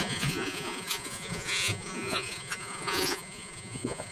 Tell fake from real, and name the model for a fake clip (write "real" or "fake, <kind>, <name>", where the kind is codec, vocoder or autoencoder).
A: fake, vocoder, Vocos